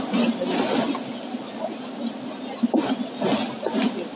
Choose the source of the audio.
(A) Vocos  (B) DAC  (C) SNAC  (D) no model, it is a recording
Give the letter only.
D